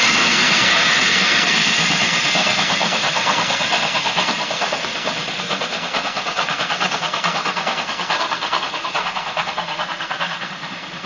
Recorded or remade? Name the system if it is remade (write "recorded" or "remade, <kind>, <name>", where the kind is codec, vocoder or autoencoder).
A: remade, codec, SNAC